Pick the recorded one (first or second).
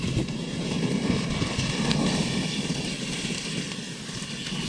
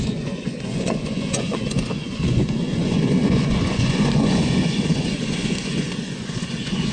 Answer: first